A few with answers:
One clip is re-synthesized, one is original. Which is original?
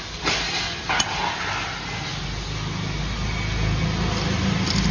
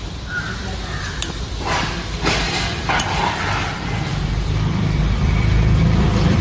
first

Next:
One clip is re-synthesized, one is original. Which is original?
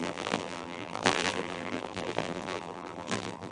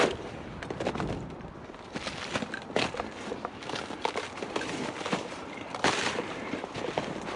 second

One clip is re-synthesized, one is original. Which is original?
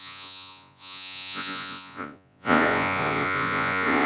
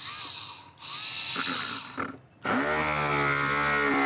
second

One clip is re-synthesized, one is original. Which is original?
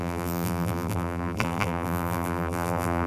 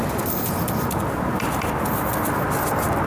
second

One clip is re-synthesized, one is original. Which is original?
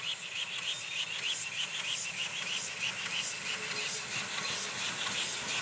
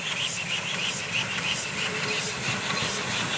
first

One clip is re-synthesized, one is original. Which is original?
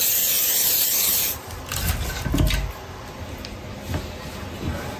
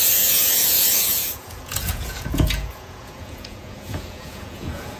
first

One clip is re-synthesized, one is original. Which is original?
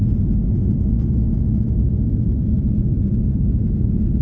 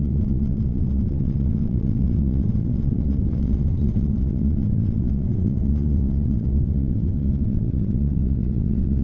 first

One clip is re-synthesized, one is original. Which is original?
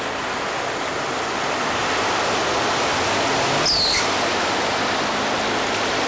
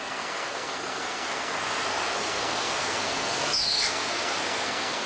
first